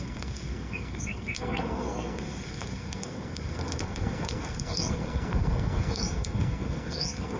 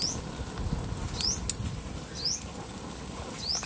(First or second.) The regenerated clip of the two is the first